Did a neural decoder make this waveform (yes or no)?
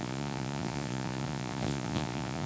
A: yes